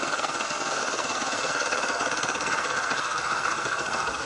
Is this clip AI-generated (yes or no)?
yes